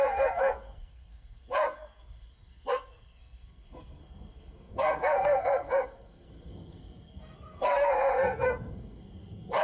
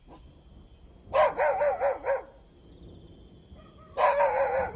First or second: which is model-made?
first